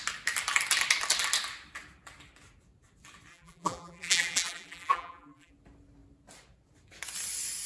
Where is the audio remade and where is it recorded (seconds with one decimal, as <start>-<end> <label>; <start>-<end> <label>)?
0.0-3.3 recorded; 3.3-5.5 remade; 5.5-7.7 recorded